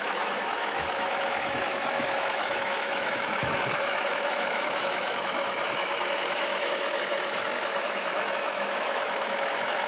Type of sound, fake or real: fake